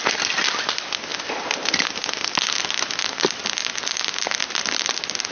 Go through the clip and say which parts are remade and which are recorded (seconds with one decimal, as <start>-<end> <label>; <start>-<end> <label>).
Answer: 0.0-5.3 recorded

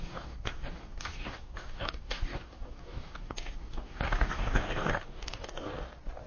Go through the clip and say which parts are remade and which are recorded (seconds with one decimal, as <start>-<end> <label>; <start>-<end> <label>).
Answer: 0.0-5.7 remade; 5.7-6.3 recorded

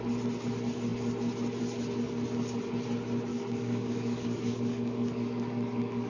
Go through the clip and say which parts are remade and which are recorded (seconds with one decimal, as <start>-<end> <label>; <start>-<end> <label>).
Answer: 0.0-3.3 recorded; 3.3-6.1 remade

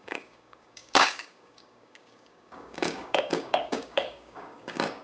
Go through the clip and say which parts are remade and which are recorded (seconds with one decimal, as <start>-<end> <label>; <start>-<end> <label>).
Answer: 0.0-5.0 remade

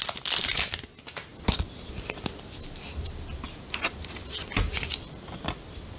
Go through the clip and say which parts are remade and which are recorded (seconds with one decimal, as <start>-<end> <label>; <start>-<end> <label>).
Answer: 0.0-6.0 recorded